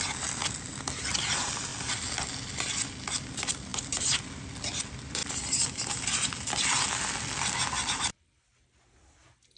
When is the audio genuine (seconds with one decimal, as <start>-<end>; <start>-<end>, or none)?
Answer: 0.0-9.6